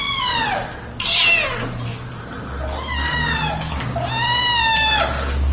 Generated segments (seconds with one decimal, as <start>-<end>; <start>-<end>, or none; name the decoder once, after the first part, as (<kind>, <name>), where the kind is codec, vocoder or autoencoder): none

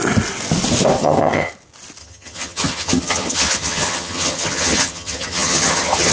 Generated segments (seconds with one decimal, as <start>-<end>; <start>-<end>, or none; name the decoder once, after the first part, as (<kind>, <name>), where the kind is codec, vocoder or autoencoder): 1.0-1.5 (vocoder, HiFi-GAN); 2.0-6.1

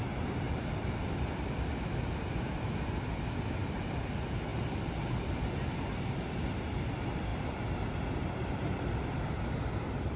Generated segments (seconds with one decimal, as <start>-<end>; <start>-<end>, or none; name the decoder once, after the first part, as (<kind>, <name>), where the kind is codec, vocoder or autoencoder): none

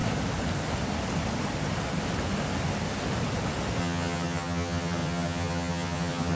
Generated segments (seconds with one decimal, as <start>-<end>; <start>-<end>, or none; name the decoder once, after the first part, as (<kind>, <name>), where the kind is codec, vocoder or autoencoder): 3.8-6.4 (vocoder, HiFi-GAN)

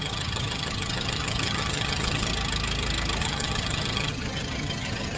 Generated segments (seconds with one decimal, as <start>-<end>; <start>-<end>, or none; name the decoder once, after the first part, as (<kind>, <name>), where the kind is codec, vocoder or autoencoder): 0.0-2.3 (vocoder, HiFi-GAN); 3.2-5.2

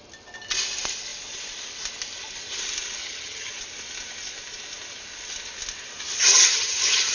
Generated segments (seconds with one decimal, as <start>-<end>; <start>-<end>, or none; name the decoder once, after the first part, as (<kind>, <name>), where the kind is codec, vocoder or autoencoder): 3.0-3.5 (vocoder, HiFi-GAN); 6.3-7.1

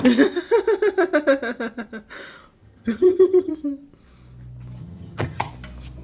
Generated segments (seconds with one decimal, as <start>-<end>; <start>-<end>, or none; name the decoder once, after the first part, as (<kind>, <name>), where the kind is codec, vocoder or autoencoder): 2.6-3.5 (vocoder, HiFi-GAN); 4.8-5.5